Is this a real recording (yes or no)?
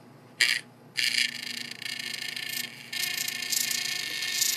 yes